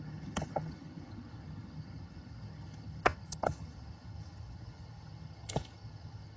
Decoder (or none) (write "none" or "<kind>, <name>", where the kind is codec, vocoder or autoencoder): vocoder, HiFi-GAN